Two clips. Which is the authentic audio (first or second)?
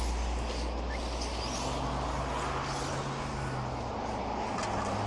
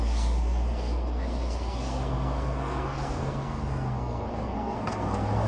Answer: first